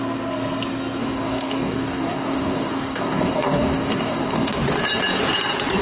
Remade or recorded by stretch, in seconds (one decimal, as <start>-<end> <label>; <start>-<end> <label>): 0.0-1.0 recorded; 1.0-4.5 remade; 4.5-5.8 recorded